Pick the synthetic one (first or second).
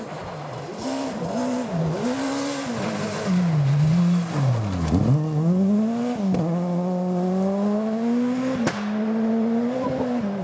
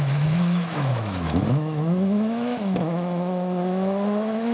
second